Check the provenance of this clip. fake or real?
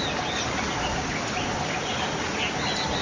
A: real